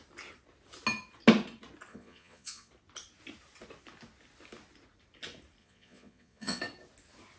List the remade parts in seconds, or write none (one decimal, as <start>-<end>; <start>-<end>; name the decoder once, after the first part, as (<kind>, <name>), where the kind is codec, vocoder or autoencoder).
1.9-2.7 (vocoder, Vocos); 5.6-6.6